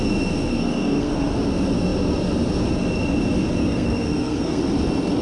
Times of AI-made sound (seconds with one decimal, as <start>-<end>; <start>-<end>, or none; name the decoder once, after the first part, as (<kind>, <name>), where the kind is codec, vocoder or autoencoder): 0.5-1.3 (codec, SNAC); 3.6-4.6